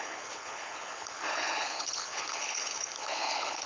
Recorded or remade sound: remade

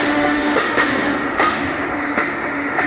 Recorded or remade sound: remade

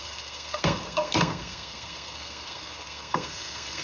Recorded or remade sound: remade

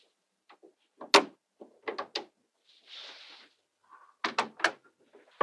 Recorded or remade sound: recorded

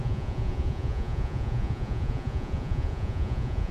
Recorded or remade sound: remade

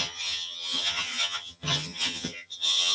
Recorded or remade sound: remade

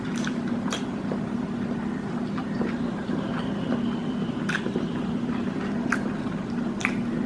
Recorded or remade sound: recorded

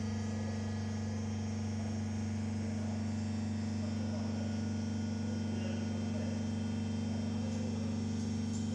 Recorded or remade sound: recorded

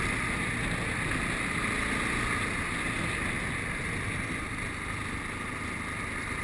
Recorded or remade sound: recorded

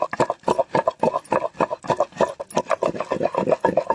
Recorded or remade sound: recorded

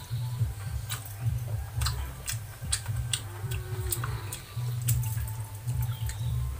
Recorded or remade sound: remade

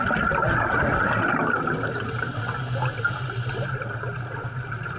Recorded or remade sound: recorded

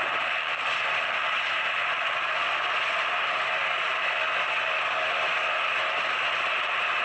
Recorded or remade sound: recorded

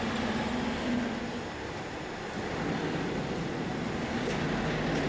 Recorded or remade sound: recorded